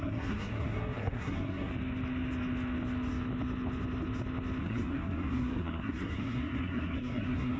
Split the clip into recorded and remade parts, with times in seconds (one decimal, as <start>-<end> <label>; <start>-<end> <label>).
0.0-1.7 remade; 1.7-4.6 recorded; 4.6-7.6 remade